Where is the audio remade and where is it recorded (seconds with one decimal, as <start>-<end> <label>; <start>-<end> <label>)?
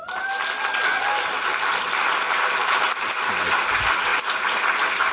0.0-5.1 recorded